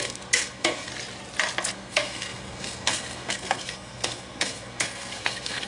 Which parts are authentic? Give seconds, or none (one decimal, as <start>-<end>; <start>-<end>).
0.9-1.7